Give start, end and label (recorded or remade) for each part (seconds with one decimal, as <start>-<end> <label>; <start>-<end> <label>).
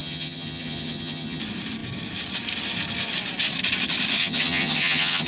0.0-1.4 remade; 1.4-4.2 recorded; 4.2-5.3 remade